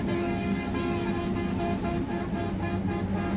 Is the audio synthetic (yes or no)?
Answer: no